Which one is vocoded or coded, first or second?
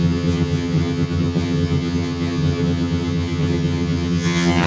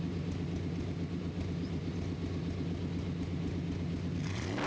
first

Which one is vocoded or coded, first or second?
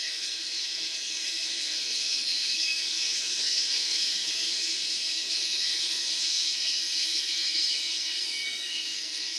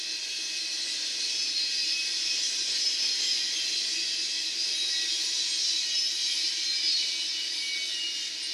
first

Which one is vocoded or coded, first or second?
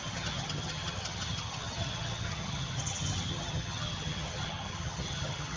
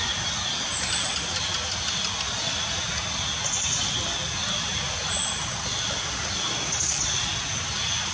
first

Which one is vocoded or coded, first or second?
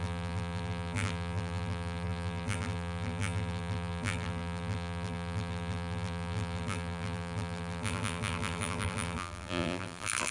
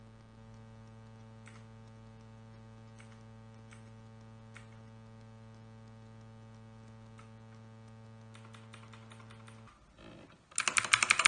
first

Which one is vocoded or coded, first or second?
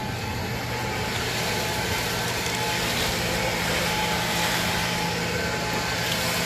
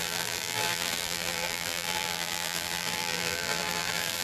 second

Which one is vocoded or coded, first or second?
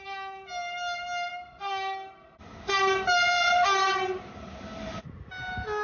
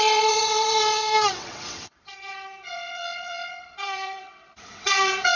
second